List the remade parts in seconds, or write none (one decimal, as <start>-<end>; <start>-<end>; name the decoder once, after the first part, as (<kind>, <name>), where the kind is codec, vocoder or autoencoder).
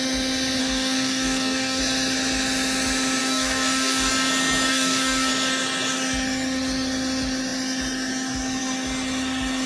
0.6-1.8 (codec, DAC); 3.2-4.1; 4.7-5.3